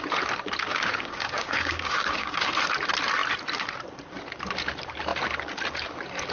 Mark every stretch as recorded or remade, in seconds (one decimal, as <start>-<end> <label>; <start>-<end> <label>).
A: 0.0-0.7 recorded; 0.7-2.5 remade; 2.5-6.3 recorded